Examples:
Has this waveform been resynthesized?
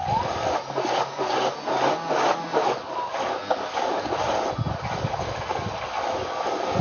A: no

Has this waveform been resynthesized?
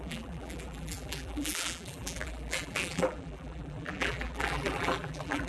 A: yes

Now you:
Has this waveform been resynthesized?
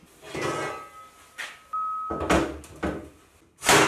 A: no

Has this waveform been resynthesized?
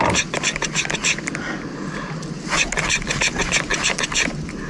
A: no